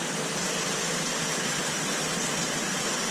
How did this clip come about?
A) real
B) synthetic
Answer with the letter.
A